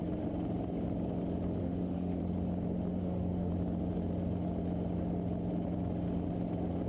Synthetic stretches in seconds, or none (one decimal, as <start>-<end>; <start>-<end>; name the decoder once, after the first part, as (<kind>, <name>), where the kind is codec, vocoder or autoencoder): 1.6-2.2 (autoencoder, DAC-VAE); 3.0-3.5